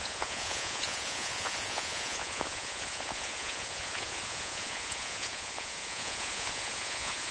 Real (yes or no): no